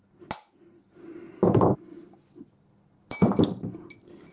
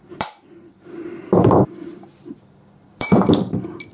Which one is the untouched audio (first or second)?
first